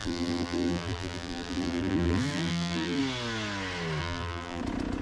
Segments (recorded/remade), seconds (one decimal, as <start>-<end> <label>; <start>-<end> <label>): 0.0-3.0 remade; 3.0-4.0 recorded; 4.0-4.6 remade; 4.6-5.0 recorded